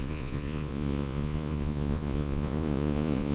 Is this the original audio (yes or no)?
no